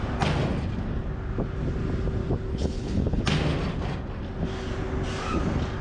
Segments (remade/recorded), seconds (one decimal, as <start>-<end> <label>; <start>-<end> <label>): 0.0-2.5 recorded; 2.5-3.2 remade; 3.2-5.8 recorded